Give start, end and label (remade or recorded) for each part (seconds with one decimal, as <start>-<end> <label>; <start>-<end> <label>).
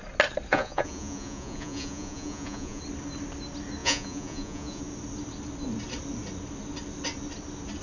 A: 0.0-0.5 recorded; 0.5-2.8 remade; 2.8-3.8 recorded; 3.8-4.8 remade; 4.8-7.8 recorded